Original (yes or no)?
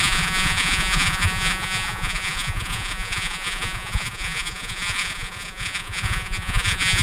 no